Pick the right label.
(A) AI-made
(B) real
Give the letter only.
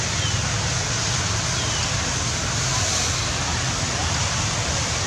B